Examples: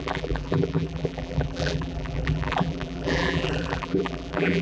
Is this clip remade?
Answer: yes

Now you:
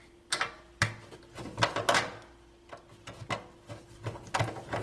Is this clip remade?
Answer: no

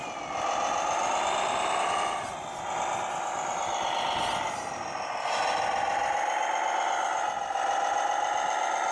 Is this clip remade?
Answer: no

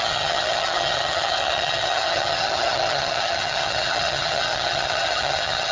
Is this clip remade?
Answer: yes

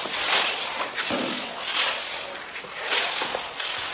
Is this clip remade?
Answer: no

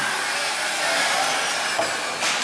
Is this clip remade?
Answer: no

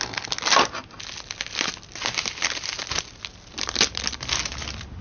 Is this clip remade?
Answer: no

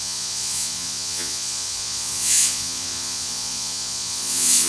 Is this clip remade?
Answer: yes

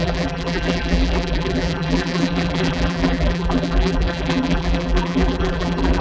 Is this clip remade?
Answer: yes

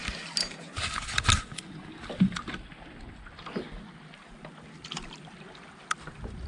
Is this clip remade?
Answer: no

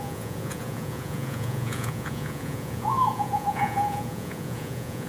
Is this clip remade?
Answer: yes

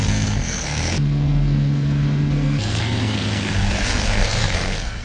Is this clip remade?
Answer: yes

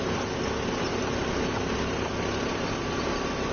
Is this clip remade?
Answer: no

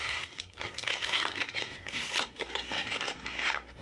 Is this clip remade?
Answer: yes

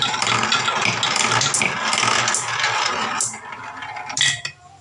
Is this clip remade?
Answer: no